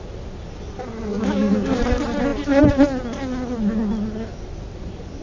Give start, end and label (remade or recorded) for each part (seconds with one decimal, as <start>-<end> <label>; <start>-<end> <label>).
0.0-1.1 recorded; 1.1-1.8 remade; 1.8-5.2 recorded